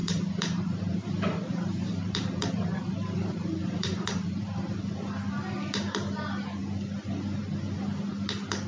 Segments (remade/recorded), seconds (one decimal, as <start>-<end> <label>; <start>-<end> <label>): 0.0-4.8 remade; 4.8-8.7 recorded